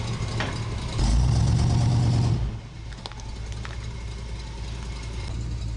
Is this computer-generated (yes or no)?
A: no